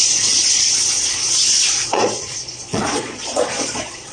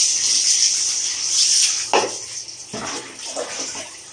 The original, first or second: second